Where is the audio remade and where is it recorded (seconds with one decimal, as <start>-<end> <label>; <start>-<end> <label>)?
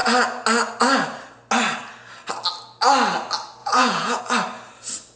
0.0-3.6 recorded; 3.6-4.2 remade; 4.2-5.2 recorded